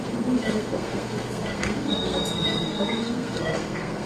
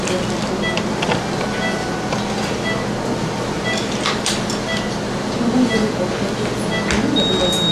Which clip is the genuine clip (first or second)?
second